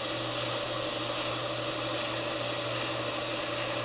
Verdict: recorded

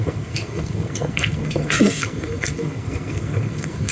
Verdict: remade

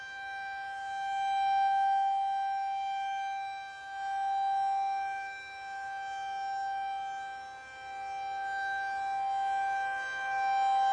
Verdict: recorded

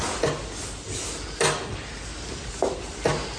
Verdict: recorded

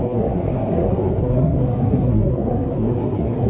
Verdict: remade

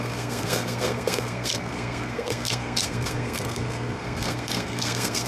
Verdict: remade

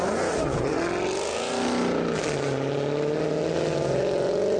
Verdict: recorded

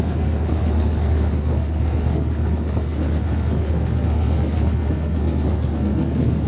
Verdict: remade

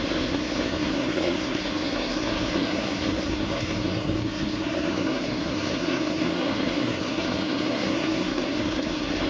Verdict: remade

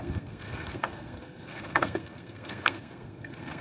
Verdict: remade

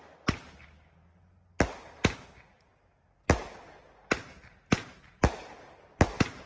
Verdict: recorded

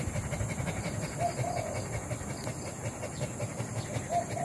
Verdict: recorded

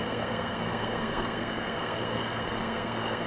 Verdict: remade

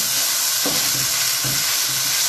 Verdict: recorded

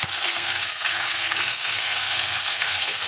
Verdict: remade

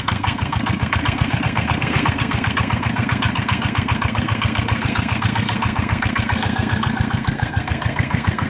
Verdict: remade